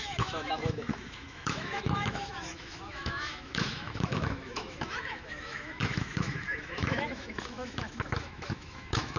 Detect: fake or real fake